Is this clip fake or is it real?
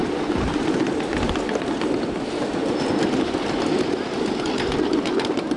real